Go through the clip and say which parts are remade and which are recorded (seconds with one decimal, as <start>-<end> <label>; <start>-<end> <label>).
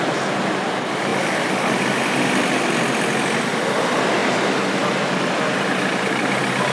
0.0-6.7 recorded